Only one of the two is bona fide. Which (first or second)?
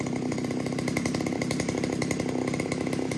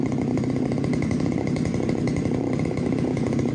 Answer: first